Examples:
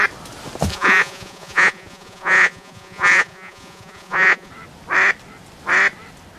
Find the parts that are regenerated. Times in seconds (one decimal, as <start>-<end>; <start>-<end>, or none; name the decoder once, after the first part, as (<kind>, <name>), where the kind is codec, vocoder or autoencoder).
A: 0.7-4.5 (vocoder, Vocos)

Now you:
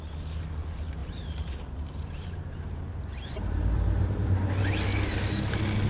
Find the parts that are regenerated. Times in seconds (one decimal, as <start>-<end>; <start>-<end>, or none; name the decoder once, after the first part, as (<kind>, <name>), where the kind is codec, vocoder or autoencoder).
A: 1.0-4.5 (vocoder, BigVGAN v2)

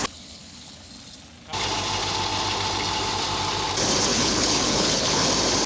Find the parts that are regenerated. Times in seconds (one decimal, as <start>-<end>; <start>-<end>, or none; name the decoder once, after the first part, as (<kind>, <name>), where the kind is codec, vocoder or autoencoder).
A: 0.0-0.9 (codec, HILCodec); 4.1-5.3

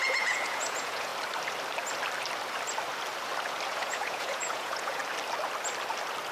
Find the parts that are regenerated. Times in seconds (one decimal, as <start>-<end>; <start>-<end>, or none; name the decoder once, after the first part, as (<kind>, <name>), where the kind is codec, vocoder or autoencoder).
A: 0.0-1.1 (vocoder, Vocos); 3.7-5.0